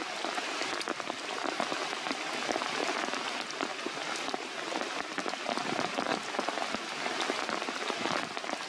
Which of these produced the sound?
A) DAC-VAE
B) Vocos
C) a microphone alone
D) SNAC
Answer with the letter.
C